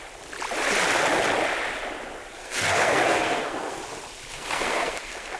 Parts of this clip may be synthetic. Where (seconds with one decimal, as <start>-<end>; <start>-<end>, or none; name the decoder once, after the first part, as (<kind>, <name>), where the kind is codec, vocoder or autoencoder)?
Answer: 2.3-3.8 (codec, SNAC); 4.3-5.4